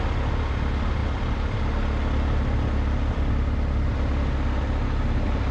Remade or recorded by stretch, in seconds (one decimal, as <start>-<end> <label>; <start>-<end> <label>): 0.0-1.0 recorded; 1.0-3.3 remade; 3.3-5.5 recorded